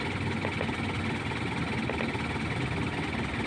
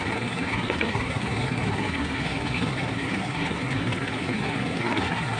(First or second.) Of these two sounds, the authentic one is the first